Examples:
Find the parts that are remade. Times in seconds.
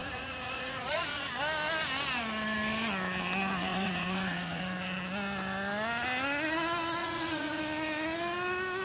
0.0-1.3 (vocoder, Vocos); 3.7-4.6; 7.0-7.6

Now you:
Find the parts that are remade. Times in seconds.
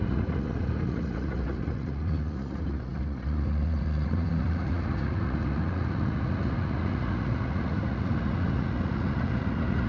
0.0-9.9 (vocoder, Vocos)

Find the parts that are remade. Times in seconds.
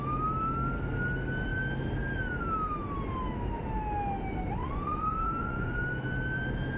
4.6-5.8 (vocoder, Vocos)